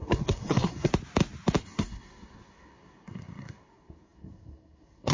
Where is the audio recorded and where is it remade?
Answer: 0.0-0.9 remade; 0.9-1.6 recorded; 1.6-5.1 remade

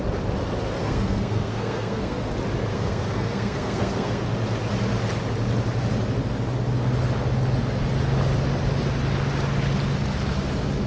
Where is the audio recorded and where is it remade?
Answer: 0.0-0.8 recorded; 0.8-2.3 remade; 2.3-2.7 recorded; 2.7-4.2 remade; 4.2-10.9 recorded

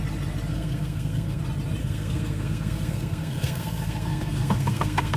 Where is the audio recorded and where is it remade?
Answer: 0.0-0.5 recorded; 0.5-1.4 remade; 1.4-1.8 recorded; 1.8-5.2 remade

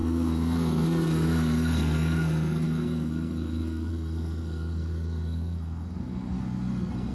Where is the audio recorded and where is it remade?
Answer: 0.0-7.1 remade

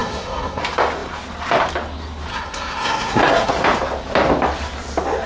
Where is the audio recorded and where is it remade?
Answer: 0.0-0.6 remade; 0.6-2.3 recorded; 2.3-3.5 remade; 3.5-5.3 recorded

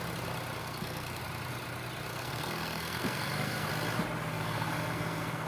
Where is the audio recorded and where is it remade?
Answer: 0.0-0.6 recorded; 0.6-1.2 remade; 1.2-2.1 recorded; 2.1-3.7 remade; 3.7-4.3 recorded; 4.3-5.5 remade